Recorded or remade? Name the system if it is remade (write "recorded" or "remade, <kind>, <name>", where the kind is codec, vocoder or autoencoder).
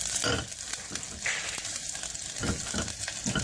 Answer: recorded